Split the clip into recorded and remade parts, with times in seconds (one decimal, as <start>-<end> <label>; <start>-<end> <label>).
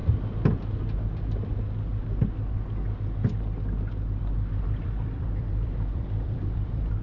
0.0-4.2 recorded; 4.2-7.0 remade